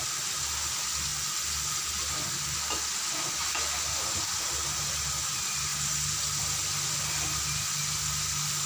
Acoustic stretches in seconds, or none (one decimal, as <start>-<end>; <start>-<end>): 0.0-8.7